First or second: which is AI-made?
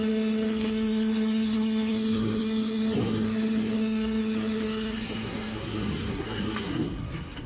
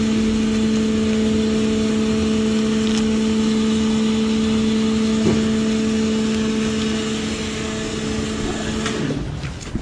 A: first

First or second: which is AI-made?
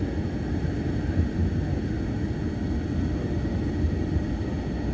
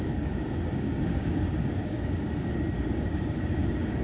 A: second